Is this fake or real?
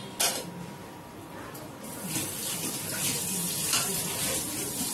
real